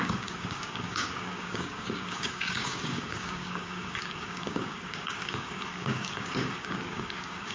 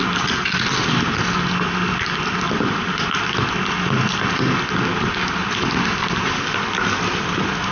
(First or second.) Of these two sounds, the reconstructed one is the first